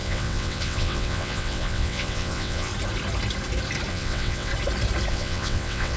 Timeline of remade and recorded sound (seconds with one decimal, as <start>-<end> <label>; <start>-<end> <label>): 0.0-2.7 remade; 2.7-3.9 recorded; 3.9-4.5 remade; 4.5-5.1 recorded; 5.1-6.0 remade